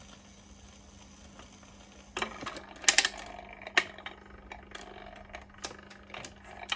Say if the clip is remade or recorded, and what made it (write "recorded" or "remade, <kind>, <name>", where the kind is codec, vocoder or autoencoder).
recorded